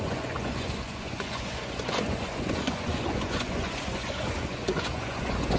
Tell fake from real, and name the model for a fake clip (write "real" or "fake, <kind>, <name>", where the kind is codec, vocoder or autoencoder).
fake, vocoder, Vocos